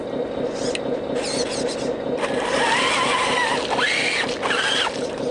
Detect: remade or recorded recorded